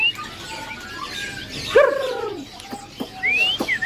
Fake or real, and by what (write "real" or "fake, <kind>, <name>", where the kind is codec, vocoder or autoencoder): real